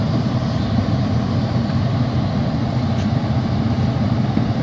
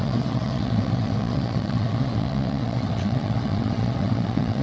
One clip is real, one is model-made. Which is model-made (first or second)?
second